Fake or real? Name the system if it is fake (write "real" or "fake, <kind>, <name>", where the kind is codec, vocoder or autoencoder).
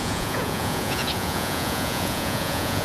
fake, vocoder, Vocos